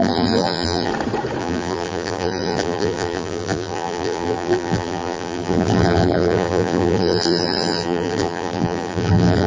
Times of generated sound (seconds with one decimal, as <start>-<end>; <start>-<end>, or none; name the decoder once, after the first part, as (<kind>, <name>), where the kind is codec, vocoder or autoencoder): 0.0-0.9 (vocoder, BigVGAN v2); 1.4-9.5